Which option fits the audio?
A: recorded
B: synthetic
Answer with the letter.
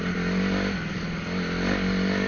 A